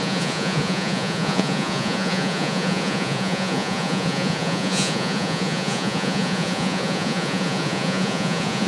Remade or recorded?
remade